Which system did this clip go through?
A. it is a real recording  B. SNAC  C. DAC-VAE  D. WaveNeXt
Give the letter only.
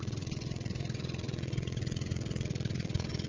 D